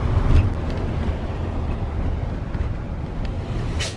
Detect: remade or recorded recorded